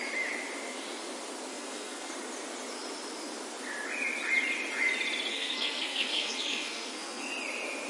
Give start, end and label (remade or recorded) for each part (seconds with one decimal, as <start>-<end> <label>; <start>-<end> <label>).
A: 0.0-1.5 recorded; 1.5-2.1 remade; 2.1-5.3 recorded; 5.3-7.3 remade; 7.3-7.9 recorded